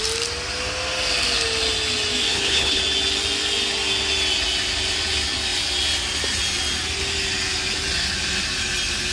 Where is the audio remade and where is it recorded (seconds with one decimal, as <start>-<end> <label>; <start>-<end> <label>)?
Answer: 0.0-2.3 recorded; 2.3-2.8 remade; 2.8-9.1 recorded